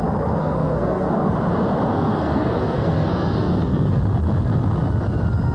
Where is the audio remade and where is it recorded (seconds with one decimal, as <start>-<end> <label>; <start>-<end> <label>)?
0.0-0.4 recorded; 0.4-1.3 remade; 1.3-1.9 recorded; 1.9-4.0 remade; 4.0-5.5 recorded